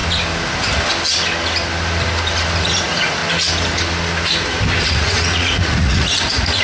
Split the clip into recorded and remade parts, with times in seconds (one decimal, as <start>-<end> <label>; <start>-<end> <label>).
0.0-2.6 recorded; 2.6-3.2 remade; 3.2-4.8 recorded; 4.8-6.6 remade